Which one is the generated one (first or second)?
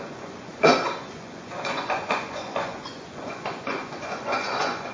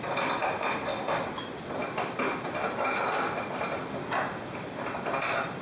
first